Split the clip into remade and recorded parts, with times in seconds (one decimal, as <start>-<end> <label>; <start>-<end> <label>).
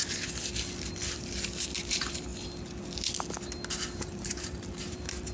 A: 0.0-1.6 recorded; 1.6-2.3 remade; 2.3-3.7 recorded; 3.7-5.3 remade